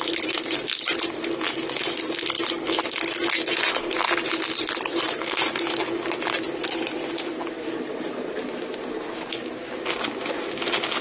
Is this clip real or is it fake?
real